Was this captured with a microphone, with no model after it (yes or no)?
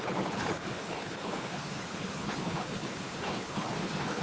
no